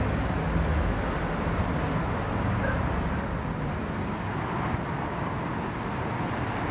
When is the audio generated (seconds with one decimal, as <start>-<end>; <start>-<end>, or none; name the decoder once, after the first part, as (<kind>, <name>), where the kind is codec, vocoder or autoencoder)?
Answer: none